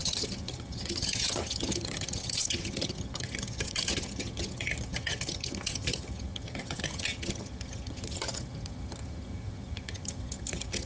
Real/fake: fake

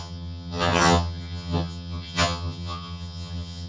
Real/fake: fake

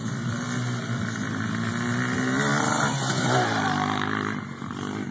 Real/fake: real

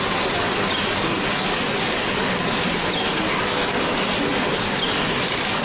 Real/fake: real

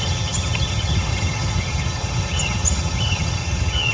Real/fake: fake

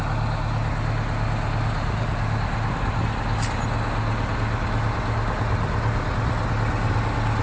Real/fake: real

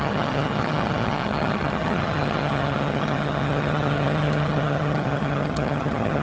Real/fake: fake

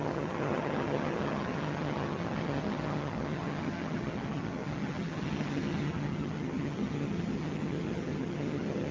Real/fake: fake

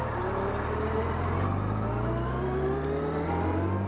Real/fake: real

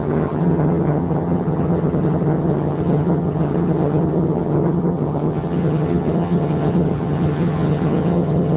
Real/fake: fake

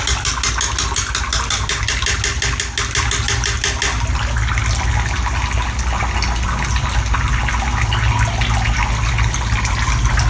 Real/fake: real